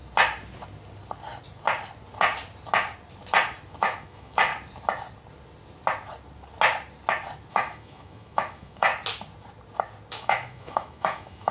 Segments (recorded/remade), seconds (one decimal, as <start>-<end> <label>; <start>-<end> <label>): 0.0-3.8 recorded; 3.8-4.5 remade; 4.5-7.5 recorded; 7.5-8.9 remade; 8.9-10.1 recorded; 10.1-11.5 remade